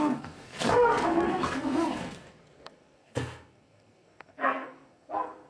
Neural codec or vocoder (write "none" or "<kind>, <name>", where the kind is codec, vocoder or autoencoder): codec, SNAC